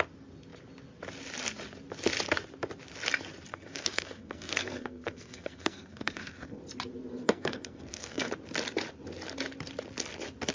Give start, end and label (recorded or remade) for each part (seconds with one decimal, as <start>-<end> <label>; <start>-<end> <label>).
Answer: 0.0-3.5 recorded; 3.5-6.6 remade; 6.6-7.2 recorded; 7.2-8.3 remade; 8.3-10.5 recorded

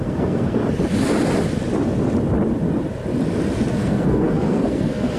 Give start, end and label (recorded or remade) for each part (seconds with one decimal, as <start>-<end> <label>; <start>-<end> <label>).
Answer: 0.0-0.6 remade; 0.6-3.7 recorded; 3.7-5.2 remade

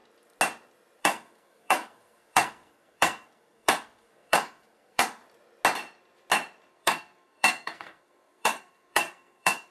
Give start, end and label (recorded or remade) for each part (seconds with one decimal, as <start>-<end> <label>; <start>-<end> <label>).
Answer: 0.0-1.0 recorded; 1.0-5.2 remade; 5.2-6.7 recorded; 6.7-9.7 remade

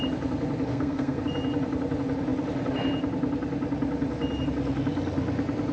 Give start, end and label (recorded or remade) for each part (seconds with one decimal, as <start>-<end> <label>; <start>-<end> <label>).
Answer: 0.0-0.7 recorded; 0.7-1.2 remade; 1.2-5.7 recorded

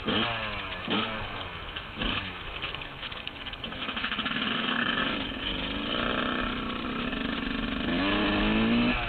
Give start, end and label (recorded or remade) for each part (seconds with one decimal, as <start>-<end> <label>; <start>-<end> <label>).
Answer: 0.0-0.8 recorded; 0.8-5.0 remade; 5.0-9.1 recorded

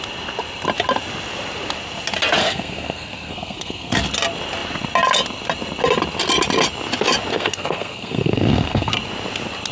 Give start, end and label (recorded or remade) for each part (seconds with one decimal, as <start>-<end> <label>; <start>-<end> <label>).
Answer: 0.0-2.4 recorded; 2.4-3.9 remade; 3.9-7.3 recorded; 7.3-8.9 remade; 8.9-9.7 recorded

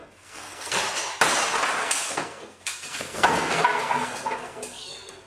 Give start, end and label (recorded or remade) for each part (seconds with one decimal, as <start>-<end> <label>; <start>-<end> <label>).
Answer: 0.0-0.8 remade; 0.8-1.8 recorded; 1.8-5.3 remade